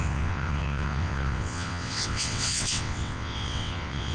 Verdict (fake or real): fake